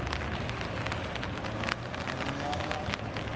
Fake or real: real